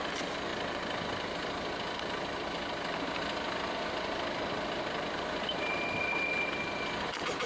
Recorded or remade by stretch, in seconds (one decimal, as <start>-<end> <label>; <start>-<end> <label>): 0.0-7.5 recorded